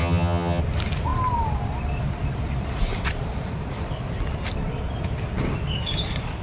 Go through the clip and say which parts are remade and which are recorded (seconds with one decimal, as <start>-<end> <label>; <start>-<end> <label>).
0.0-0.6 remade; 0.6-6.4 recorded